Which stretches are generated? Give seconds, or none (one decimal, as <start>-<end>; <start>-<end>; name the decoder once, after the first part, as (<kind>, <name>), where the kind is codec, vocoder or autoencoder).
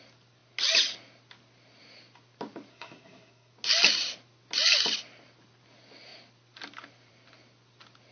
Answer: 2.7-3.5 (codec, SNAC)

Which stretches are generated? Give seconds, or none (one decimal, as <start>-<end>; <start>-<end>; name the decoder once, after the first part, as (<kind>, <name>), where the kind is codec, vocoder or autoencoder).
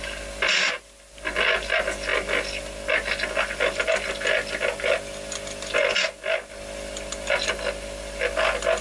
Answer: none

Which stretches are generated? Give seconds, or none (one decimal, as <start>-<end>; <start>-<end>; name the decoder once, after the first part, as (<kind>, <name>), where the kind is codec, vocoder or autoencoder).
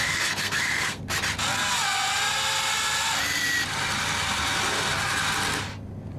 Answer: 0.0-1.0 (codec, SNAC)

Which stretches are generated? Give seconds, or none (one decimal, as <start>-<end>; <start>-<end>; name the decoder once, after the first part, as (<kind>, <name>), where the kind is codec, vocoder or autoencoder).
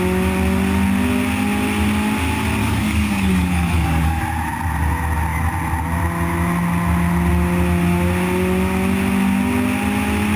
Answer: 2.6-4.2 (codec, DAC)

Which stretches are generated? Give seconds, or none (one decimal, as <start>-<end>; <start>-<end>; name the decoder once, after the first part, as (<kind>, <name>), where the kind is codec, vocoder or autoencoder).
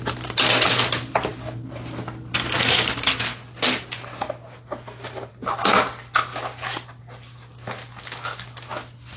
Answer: none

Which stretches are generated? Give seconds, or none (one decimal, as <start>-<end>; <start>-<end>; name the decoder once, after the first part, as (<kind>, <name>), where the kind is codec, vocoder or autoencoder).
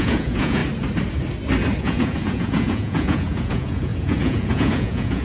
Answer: 0.0-0.6 (vocoder, Vocos); 1.8-5.2